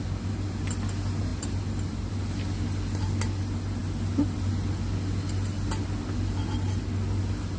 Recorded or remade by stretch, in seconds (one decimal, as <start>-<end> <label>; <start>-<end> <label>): 0.0-7.6 recorded

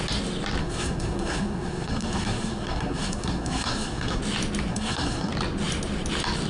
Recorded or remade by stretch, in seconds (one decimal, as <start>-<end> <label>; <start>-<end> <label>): 0.0-0.6 recorded; 0.6-4.2 remade; 4.2-4.7 recorded; 4.7-5.3 remade; 5.3-6.5 recorded